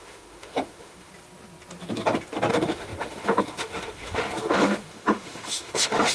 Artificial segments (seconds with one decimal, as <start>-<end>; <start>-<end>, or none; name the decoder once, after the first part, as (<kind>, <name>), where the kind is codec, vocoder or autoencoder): 0.0-1.1 (autoencoder, DAC-VAE); 2.5-6.1